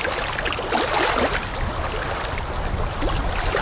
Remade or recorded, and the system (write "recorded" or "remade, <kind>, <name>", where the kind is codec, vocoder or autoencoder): recorded